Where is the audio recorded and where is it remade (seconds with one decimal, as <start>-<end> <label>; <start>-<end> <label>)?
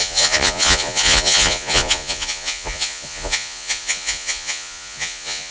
0.0-5.5 remade